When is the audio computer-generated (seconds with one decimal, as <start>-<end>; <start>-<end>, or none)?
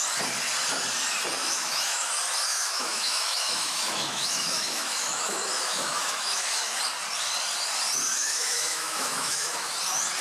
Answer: 1.4-2.1; 2.5-6.8; 8.1-9.7